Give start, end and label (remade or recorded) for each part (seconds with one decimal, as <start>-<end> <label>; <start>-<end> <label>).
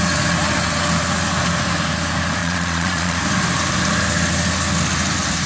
0.0-2.4 recorded; 2.4-3.2 remade; 3.2-5.5 recorded